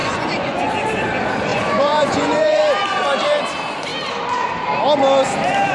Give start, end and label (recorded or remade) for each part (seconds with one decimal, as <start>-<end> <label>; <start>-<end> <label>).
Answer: 0.0-0.7 remade; 0.7-1.5 recorded; 1.5-2.6 remade; 2.6-5.7 recorded